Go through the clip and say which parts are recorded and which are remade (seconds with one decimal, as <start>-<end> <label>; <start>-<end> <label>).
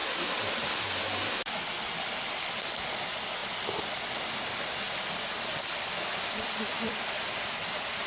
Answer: 0.0-8.1 recorded